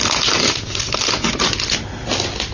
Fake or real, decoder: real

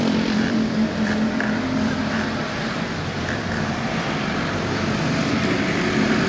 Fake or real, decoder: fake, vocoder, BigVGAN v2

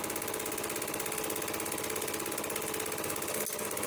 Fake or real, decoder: real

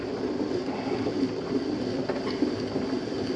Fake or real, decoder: real